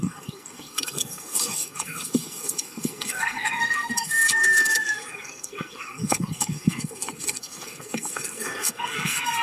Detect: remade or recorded remade